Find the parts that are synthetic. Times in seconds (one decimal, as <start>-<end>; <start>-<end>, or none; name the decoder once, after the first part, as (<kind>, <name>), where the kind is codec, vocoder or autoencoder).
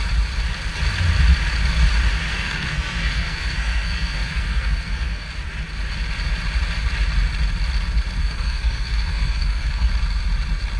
2.3-5.3 (codec, SNAC); 8.2-9.9